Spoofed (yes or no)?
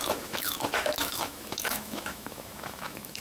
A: yes